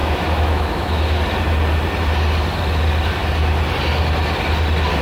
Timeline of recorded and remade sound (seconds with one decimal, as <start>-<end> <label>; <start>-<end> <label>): 0.0-1.2 remade; 1.2-5.0 recorded